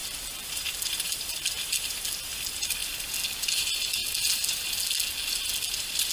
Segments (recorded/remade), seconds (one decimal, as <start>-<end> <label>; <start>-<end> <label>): 0.0-2.8 remade; 2.8-3.4 recorded; 3.4-4.0 remade; 4.0-6.1 recorded